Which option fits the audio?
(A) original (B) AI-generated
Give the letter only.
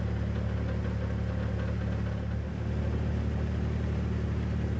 A